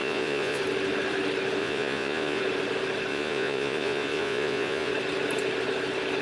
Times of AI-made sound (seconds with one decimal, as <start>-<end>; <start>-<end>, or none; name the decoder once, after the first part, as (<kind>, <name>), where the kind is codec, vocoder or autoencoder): 0.0-0.6 (vocoder, Vocos); 1.6-2.4; 3.1-4.9